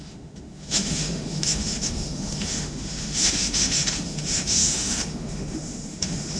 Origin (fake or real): fake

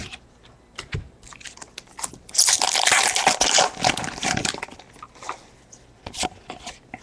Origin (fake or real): real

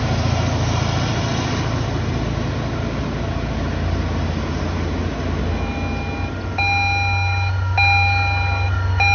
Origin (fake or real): real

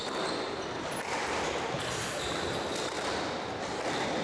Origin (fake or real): real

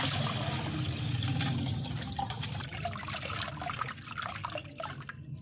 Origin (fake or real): real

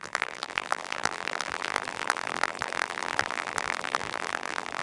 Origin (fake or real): fake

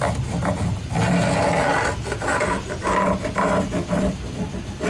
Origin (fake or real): real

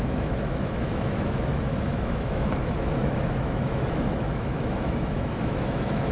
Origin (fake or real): fake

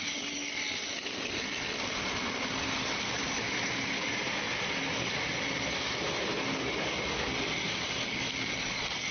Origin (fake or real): real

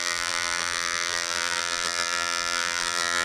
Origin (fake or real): fake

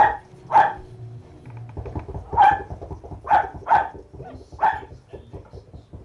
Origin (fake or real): real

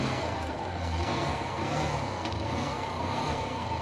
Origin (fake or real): fake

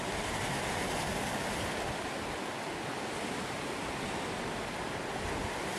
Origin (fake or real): real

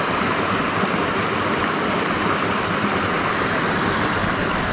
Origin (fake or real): real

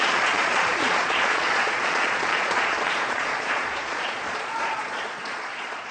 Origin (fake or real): fake